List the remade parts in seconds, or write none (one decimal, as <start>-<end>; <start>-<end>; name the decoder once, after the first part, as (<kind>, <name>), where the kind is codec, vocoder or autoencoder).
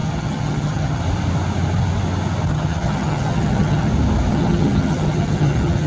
0.0-1.0 (vocoder, HiFi-GAN); 2.5-3.9; 4.3-5.9